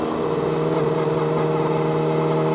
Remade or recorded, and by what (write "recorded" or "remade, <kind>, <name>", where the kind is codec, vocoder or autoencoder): recorded